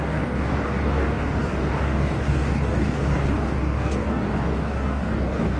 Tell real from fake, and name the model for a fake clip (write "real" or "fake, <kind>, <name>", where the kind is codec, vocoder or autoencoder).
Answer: fake, codec, DAC